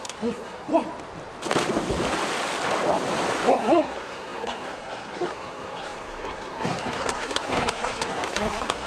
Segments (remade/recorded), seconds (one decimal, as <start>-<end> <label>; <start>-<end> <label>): 0.0-0.7 remade; 0.7-3.5 recorded; 3.5-8.9 remade